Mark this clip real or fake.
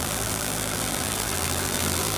fake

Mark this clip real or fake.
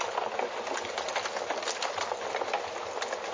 real